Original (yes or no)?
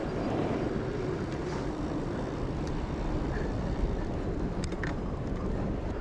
yes